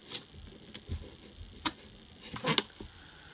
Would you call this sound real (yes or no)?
yes